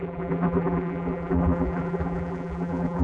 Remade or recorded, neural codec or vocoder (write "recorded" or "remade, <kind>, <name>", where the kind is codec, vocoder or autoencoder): remade, vocoder, BigVGAN v2